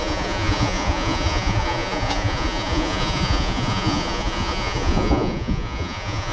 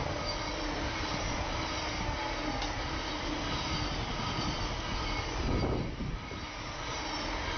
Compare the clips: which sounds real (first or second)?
second